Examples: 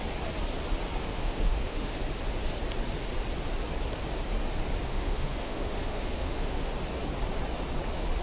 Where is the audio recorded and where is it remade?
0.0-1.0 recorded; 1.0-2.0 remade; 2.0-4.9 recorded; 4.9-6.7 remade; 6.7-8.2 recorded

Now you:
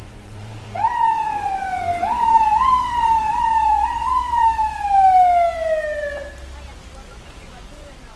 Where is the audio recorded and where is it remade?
0.0-4.6 remade; 4.6-7.1 recorded; 7.1-8.2 remade

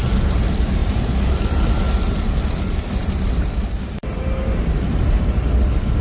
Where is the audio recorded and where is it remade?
0.0-0.8 recorded; 0.8-1.4 remade; 1.4-3.0 recorded; 3.0-5.4 remade; 5.4-6.0 recorded